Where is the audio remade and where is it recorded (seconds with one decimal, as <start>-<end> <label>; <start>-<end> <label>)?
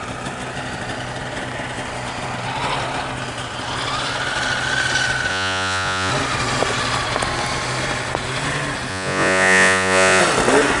0.0-5.3 recorded; 5.3-6.1 remade; 6.1-8.9 recorded; 8.9-10.2 remade; 10.2-10.8 recorded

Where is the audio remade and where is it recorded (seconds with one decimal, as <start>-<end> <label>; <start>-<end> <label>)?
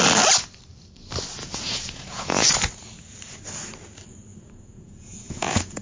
0.0-1.4 recorded; 1.4-2.5 remade; 2.5-4.3 recorded; 4.3-5.8 remade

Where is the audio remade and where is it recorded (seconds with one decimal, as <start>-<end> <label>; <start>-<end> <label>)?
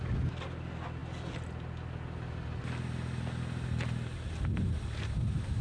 0.0-5.6 recorded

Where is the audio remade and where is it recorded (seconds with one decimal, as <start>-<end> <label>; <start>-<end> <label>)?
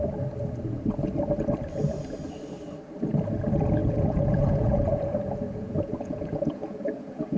0.0-3.8 recorded; 3.8-7.4 remade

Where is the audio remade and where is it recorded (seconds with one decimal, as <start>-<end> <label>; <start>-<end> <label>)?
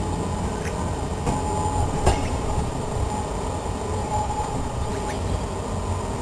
0.0-1.8 recorded; 1.8-3.1 remade; 3.1-4.0 recorded; 4.0-4.9 remade; 4.9-6.2 recorded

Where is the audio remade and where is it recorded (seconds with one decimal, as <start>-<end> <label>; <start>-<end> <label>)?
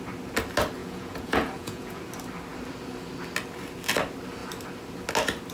0.0-0.8 recorded; 0.8-2.0 remade; 2.0-5.5 recorded